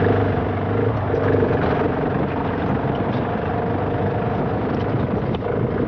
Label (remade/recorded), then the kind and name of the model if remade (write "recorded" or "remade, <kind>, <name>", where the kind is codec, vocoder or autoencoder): recorded